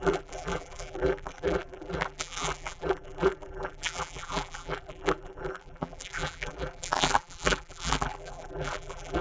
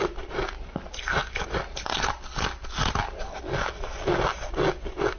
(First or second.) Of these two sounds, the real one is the second